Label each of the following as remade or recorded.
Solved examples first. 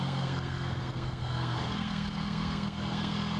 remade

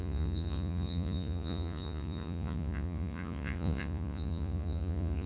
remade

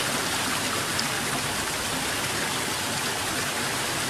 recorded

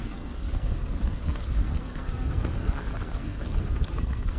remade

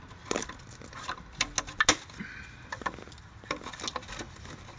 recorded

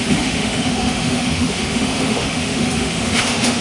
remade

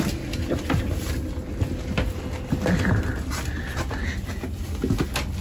recorded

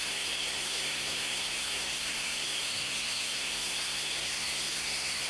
remade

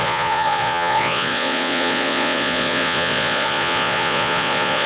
remade